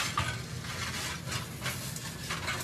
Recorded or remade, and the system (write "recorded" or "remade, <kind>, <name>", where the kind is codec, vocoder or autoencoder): recorded